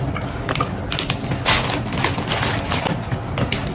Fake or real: real